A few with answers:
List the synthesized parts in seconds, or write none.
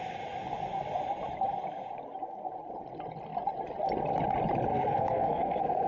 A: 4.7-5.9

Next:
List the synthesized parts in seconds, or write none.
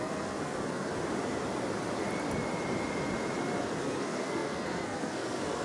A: 0.0-0.9; 3.8-5.6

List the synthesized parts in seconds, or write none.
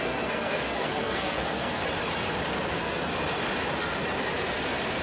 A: 0.0-1.8; 2.7-3.1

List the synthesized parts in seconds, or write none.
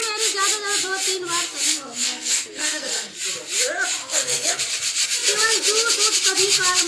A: 1.7-3.1; 4.0-4.6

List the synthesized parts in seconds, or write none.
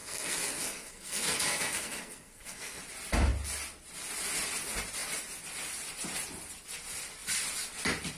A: 0.0-2.8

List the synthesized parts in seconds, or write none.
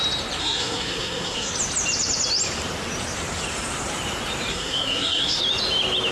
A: 0.4-1.5; 4.5-5.4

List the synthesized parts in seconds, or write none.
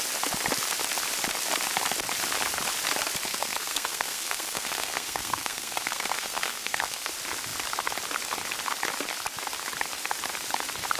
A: 3.3-7.1